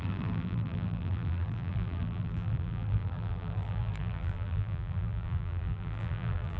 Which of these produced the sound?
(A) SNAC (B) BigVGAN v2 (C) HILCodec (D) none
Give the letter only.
B